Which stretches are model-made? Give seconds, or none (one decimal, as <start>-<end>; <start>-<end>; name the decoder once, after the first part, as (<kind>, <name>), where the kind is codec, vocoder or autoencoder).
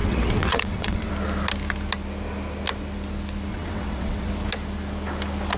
0.0-1.1 (vocoder, WaveNeXt); 3.5-4.3